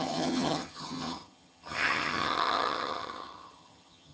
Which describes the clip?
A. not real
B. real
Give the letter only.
A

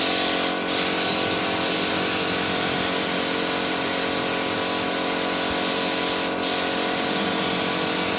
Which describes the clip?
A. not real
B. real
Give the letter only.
B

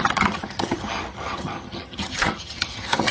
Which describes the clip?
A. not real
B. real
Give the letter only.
A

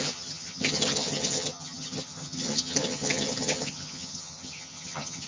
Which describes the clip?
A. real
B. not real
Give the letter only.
B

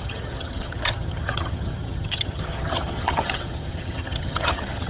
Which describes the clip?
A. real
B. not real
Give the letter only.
B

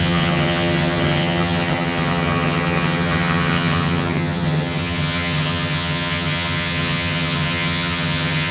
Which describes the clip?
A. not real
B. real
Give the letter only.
A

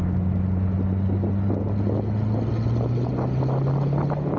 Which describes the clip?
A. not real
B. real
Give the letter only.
B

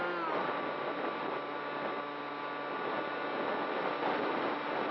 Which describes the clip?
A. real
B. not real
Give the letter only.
A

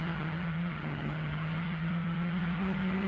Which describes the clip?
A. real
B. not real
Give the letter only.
B